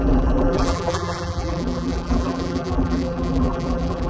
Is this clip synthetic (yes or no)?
yes